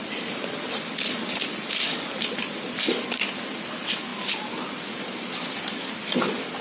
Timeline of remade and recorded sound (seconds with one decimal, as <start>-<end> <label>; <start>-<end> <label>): 0.0-6.6 recorded